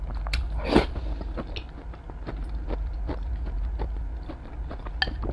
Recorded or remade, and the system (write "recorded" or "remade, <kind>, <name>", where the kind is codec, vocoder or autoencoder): recorded